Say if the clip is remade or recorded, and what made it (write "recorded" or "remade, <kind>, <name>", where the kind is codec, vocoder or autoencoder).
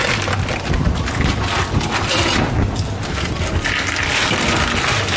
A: recorded